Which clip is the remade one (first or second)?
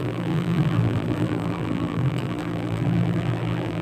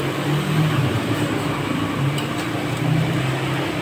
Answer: first